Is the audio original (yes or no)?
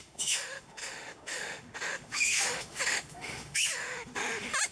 no